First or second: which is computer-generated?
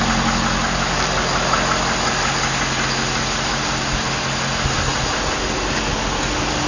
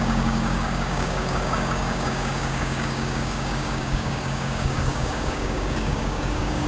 second